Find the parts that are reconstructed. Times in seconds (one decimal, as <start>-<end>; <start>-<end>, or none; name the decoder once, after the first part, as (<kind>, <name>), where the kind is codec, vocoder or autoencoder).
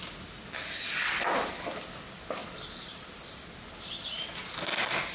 none